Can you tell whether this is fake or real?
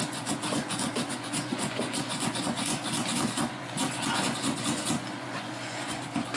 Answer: fake